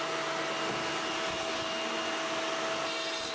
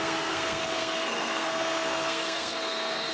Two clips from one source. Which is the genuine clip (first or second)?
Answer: first